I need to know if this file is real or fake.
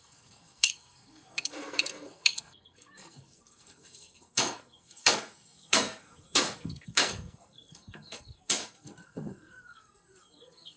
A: fake